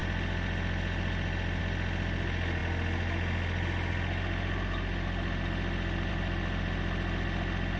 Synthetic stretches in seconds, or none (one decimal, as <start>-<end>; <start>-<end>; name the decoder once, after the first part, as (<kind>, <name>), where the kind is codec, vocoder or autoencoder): none